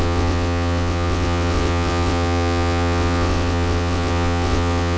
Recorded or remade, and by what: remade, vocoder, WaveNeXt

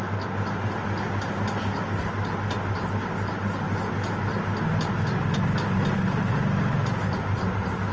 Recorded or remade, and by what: recorded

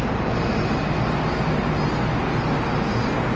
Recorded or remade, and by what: recorded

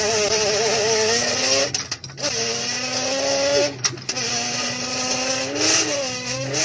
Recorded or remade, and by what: recorded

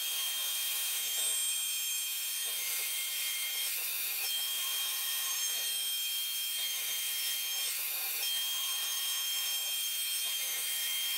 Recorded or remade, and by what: remade, autoencoder, DAC-VAE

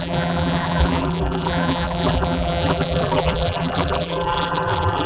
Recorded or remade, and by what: remade, vocoder, BigVGAN v2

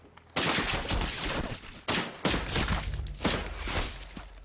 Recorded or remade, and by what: recorded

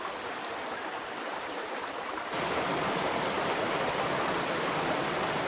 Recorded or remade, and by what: recorded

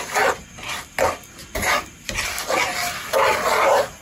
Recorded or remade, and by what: recorded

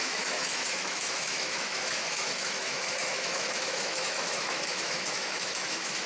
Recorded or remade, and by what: remade, autoencoder, DAC-VAE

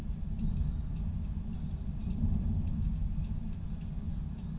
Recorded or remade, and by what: recorded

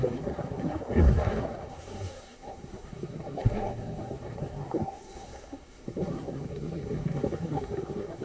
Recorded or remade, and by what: remade, codec, SNAC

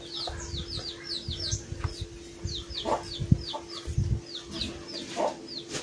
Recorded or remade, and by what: recorded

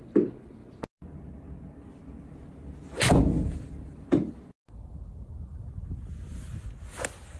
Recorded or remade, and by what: recorded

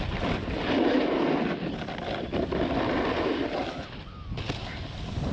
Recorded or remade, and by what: recorded